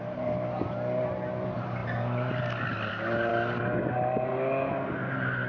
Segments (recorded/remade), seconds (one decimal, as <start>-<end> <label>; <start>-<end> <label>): 0.0-5.5 recorded